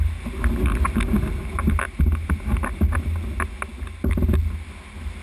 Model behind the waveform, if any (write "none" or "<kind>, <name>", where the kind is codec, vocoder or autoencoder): none